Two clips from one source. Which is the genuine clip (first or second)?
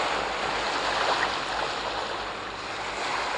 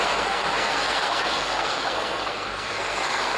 first